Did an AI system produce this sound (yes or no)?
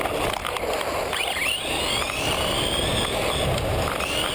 no